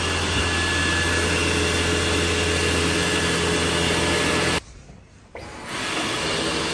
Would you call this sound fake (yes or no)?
no